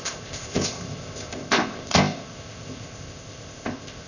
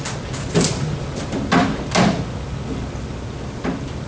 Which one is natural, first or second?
second